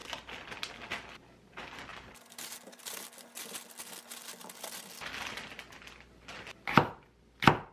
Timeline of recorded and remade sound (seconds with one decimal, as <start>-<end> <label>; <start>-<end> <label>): 0.0-1.9 recorded; 1.9-2.8 remade; 2.8-7.7 recorded